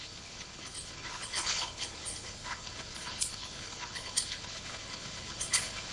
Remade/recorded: remade